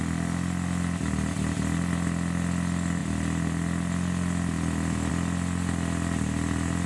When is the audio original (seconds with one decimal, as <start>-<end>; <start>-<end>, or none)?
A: 0.0-6.9